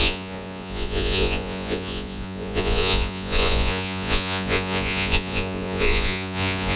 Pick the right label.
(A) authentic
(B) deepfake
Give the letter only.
B